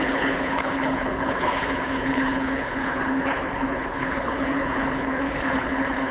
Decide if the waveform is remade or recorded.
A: remade